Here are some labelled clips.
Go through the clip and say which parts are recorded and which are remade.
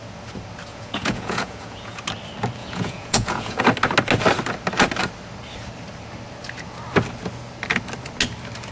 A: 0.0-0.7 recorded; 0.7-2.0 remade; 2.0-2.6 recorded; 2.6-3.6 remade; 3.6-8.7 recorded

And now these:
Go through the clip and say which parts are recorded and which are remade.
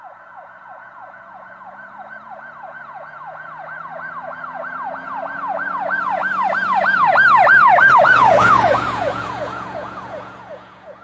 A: 0.0-6.2 remade; 6.2-8.0 recorded; 8.0-11.0 remade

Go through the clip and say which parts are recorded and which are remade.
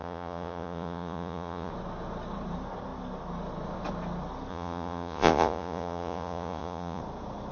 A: 0.0-1.7 remade; 1.7-4.5 recorded; 4.5-7.0 remade; 7.0-7.5 recorded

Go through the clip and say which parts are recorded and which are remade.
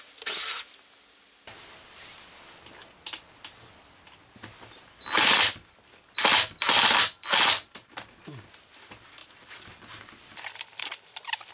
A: 0.0-11.5 recorded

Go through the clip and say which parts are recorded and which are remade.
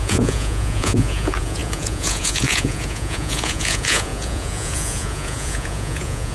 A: 0.0-6.3 remade